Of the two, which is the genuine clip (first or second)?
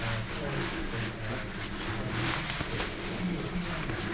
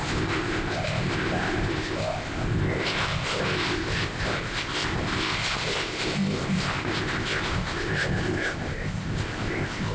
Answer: first